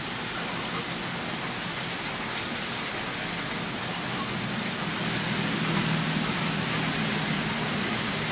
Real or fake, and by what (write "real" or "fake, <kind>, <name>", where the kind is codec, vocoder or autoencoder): real